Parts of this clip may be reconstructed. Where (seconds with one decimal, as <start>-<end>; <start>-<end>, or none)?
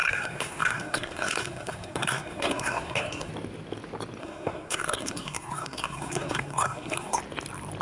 0.0-3.3; 4.2-7.2